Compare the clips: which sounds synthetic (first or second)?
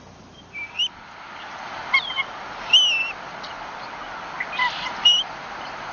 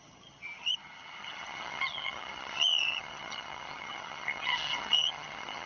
second